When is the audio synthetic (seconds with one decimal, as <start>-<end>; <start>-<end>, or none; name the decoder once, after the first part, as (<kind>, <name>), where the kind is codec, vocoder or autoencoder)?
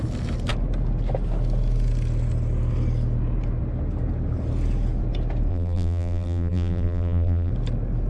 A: 5.5-7.5 (vocoder, BigVGAN v2)